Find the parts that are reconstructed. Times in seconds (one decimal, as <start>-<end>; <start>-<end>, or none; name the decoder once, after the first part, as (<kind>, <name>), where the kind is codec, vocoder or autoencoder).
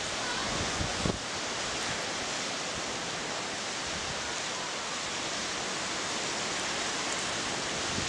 0.4-1.1 (vocoder, Vocos)